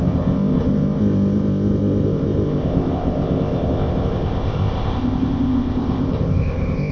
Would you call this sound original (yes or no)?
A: no